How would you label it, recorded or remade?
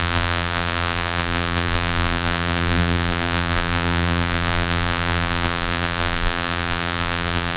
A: remade